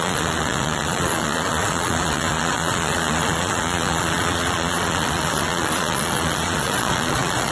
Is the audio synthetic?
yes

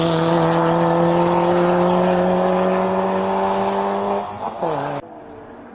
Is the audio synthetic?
no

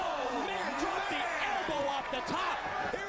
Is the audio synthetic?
yes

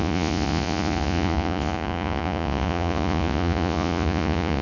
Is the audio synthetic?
yes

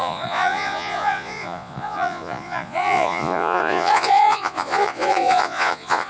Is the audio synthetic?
yes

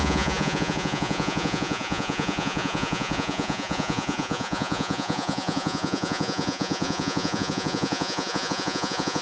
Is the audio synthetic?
yes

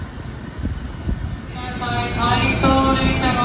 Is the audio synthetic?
no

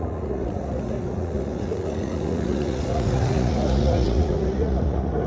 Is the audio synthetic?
yes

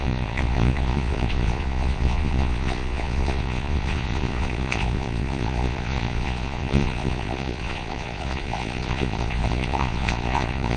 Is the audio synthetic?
yes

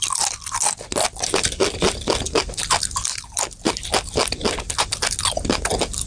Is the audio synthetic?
no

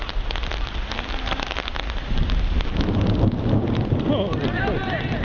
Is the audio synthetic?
no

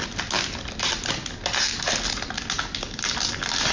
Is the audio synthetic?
no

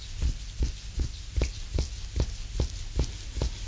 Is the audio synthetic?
no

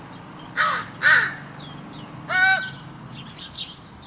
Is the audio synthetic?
no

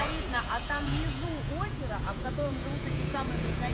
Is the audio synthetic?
yes